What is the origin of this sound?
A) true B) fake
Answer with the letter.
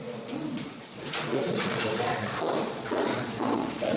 B